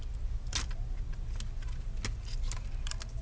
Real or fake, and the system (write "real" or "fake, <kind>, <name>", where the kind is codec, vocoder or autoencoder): real